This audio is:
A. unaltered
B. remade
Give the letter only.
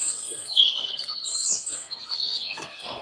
B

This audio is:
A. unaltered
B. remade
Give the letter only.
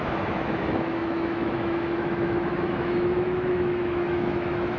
B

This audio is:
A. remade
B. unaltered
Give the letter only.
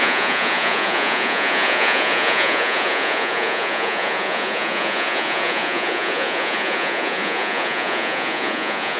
A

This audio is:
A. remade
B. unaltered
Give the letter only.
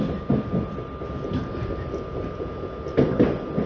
B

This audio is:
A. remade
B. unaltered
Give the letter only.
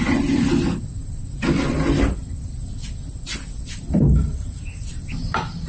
B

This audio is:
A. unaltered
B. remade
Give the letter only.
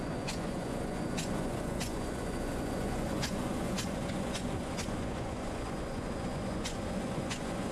B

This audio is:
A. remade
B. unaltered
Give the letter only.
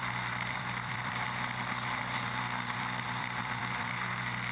A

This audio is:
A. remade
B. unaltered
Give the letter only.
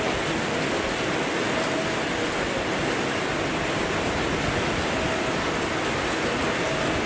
B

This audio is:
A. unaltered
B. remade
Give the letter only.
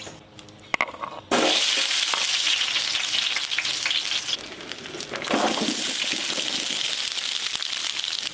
A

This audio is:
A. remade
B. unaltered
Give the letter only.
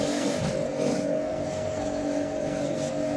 A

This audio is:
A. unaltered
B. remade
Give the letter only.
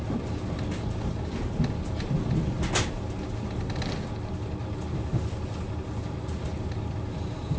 A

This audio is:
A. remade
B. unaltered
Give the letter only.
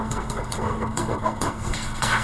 A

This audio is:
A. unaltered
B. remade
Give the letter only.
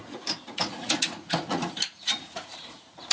B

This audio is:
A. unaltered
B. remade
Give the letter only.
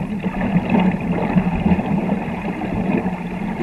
A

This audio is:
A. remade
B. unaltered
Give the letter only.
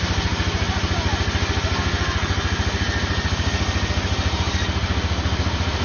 B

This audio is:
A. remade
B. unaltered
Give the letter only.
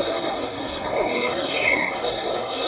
A